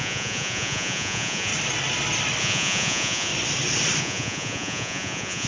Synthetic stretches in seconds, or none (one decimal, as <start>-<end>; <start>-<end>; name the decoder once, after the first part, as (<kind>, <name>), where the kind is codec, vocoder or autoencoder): 0.0-1.5 (vocoder, Vocos); 2.4-3.3; 4.0-5.5